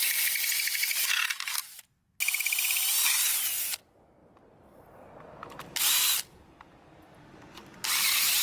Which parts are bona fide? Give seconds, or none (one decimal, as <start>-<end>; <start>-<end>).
0.0-4.2; 6.1-8.4